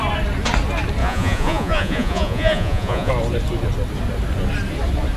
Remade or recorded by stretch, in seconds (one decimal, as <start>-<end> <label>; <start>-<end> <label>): 0.0-1.0 recorded; 1.0-3.1 remade; 3.1-5.2 recorded